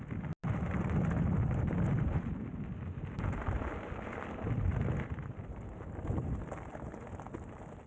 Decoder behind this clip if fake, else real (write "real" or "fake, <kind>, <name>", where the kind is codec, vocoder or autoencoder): real